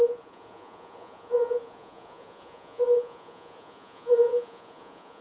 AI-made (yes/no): yes